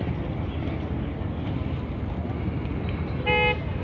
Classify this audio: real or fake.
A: real